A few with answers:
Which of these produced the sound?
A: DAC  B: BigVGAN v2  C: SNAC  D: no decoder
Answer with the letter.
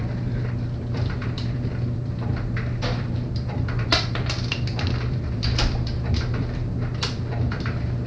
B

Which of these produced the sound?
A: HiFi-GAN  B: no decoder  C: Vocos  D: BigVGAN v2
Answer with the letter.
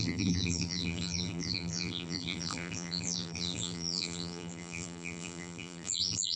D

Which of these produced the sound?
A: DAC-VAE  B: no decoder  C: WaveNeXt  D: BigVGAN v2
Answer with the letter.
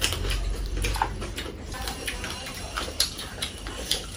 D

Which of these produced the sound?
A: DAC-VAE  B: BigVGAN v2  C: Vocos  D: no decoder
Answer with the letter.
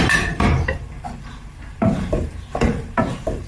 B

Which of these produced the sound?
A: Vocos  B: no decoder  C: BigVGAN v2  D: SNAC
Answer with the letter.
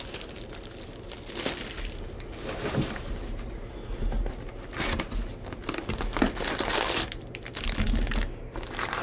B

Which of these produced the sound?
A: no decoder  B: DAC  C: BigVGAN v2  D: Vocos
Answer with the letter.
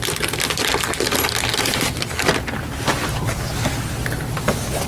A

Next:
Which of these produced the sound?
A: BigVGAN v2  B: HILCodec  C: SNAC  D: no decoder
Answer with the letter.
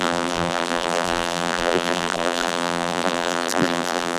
A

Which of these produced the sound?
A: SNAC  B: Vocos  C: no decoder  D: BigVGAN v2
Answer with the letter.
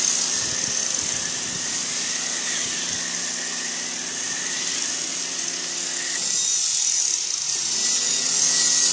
C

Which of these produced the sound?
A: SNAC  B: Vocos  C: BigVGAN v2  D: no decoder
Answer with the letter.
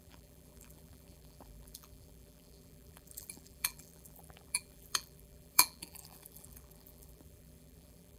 C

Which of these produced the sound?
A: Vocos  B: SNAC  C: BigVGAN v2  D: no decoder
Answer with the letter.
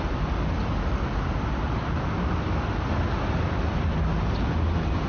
D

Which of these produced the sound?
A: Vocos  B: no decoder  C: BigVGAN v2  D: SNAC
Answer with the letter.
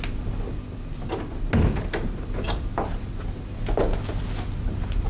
B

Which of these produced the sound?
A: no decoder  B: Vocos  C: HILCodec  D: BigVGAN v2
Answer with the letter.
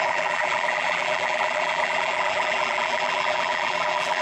D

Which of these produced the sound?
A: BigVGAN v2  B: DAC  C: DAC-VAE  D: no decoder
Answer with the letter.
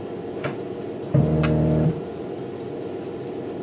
A